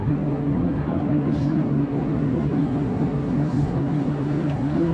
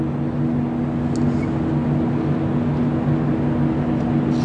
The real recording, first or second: second